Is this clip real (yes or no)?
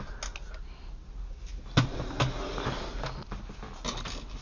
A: yes